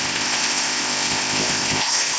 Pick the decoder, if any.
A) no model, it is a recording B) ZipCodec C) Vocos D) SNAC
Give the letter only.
B